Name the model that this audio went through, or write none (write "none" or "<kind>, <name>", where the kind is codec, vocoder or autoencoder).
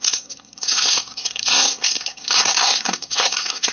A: codec, SNAC